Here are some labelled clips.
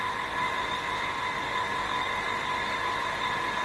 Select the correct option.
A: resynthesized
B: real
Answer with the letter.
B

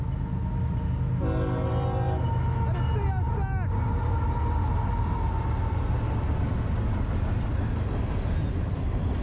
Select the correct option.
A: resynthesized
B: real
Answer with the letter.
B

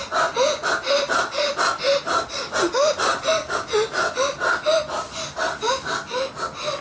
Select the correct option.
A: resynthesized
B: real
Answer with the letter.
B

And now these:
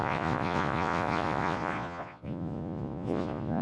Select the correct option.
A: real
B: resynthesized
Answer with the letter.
B